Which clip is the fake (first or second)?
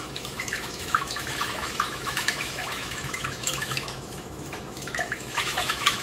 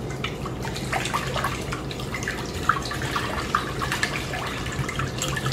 first